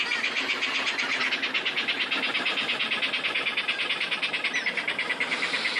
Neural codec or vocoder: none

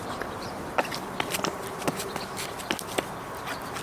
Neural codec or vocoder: vocoder, BigVGAN v2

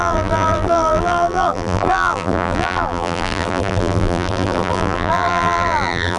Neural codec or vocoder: vocoder, BigVGAN v2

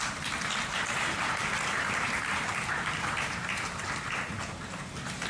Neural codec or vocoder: vocoder, BigVGAN v2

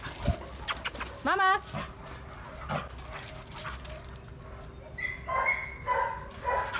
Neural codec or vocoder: none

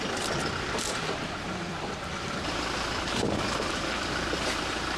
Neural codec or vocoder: vocoder, BigVGAN v2